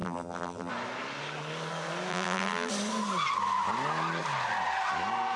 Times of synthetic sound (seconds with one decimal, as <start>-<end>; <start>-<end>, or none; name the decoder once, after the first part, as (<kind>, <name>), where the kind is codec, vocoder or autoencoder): 0.0-0.7 (vocoder, BigVGAN v2); 2.1-2.7